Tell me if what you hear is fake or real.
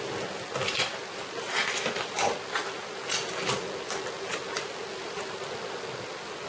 real